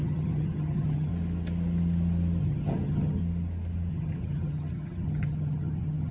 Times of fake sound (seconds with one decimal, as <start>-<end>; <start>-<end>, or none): 0.0-1.1; 2.4-3.2; 3.9-6.1